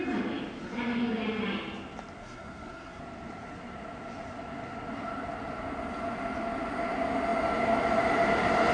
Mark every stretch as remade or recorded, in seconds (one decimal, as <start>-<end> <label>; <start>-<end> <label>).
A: 0.0-2.2 recorded; 2.2-3.0 remade; 3.0-8.7 recorded